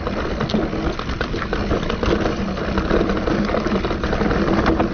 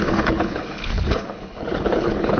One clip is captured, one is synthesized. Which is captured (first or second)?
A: first